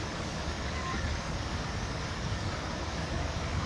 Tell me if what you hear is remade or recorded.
remade